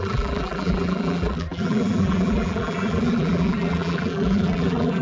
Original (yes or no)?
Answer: no